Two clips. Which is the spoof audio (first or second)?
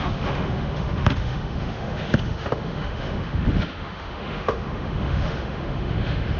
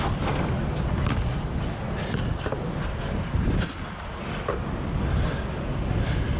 first